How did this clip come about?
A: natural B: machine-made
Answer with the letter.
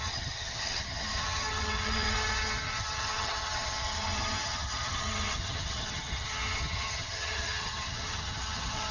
B